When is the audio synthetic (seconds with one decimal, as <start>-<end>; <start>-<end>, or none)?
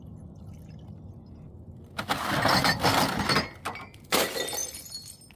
none